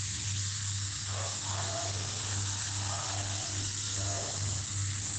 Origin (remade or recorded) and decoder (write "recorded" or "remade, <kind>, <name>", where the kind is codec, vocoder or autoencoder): remade, codec, SNAC